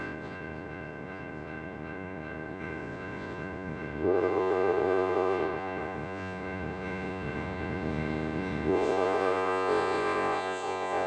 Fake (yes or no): yes